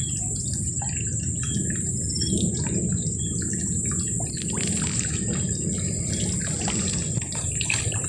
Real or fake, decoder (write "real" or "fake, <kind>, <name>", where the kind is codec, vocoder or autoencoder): real